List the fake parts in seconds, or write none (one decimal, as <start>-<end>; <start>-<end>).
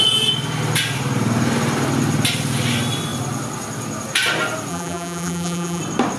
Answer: 4.7-5.8